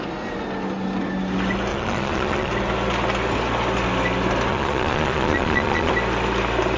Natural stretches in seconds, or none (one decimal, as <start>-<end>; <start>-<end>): 0.0-1.7; 2.5-4.5; 5.9-6.8